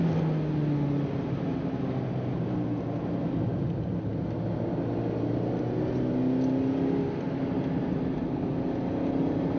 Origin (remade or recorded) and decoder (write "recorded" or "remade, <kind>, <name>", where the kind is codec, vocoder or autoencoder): recorded